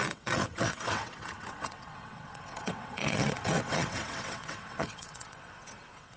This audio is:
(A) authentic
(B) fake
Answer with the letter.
B